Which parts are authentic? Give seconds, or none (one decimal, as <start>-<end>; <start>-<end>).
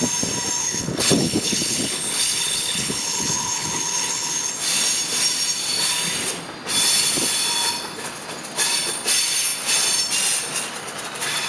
0.0-0.6; 4.5-11.5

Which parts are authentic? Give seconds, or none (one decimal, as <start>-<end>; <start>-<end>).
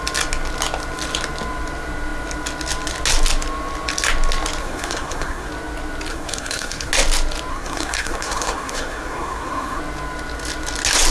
0.0-4.6; 5.5-6.1; 6.9-7.5; 9.8-11.1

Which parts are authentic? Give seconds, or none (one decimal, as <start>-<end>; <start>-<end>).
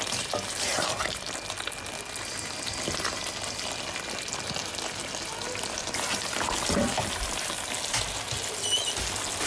0.0-9.5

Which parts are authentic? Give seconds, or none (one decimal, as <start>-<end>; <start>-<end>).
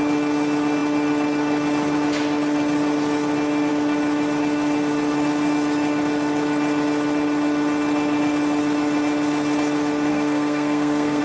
0.0-10.1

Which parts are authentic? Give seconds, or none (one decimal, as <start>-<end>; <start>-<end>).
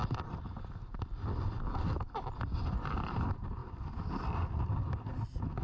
0.0-5.6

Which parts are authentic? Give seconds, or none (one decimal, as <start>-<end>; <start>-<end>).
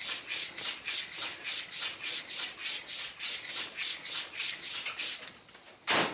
0.0-6.1